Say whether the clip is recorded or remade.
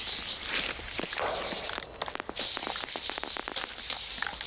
recorded